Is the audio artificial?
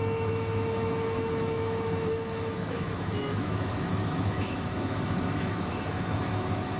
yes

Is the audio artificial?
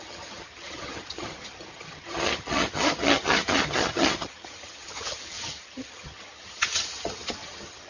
yes